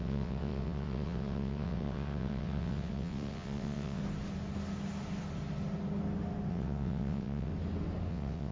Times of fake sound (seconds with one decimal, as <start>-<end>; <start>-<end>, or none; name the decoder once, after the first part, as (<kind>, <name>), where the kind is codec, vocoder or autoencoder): 0.0-4.0 (vocoder, WaveNeXt); 6.5-7.5; 8.1-8.5